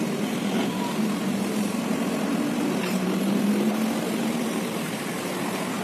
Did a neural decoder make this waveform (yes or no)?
yes